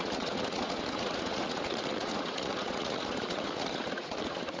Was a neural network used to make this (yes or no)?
yes